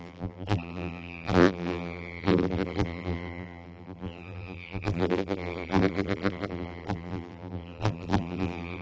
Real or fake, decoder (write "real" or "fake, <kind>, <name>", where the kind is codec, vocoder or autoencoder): fake, vocoder, BigVGAN v2